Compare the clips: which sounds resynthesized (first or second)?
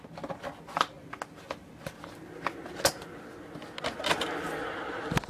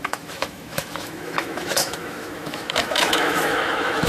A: second